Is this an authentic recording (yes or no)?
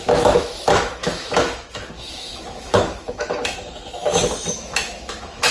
no